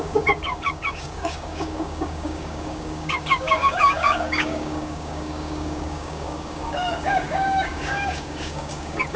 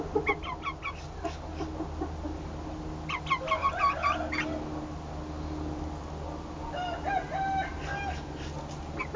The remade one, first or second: first